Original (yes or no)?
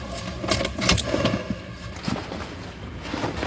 yes